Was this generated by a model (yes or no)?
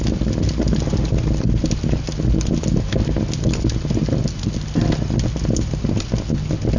no